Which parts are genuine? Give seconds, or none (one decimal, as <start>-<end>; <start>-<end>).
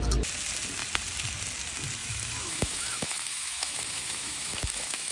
0.0-2.0